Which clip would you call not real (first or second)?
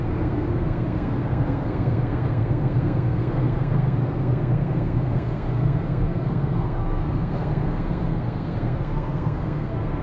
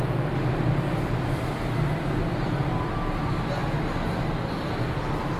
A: first